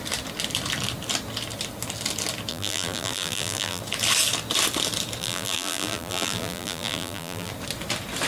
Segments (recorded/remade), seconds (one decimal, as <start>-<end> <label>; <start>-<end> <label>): 0.0-2.5 recorded; 2.5-3.8 remade; 3.8-5.2 recorded; 5.2-7.5 remade; 7.5-8.3 recorded